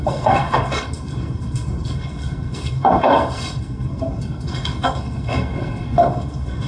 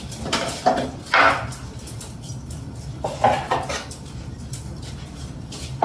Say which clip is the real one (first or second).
second